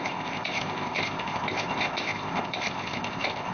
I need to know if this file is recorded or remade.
remade